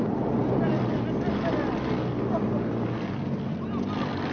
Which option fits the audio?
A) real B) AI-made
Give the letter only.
A